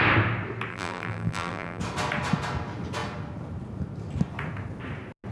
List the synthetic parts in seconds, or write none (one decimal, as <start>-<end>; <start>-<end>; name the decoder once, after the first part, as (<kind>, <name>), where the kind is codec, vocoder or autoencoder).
0.7-1.8 (vocoder, BigVGAN v2)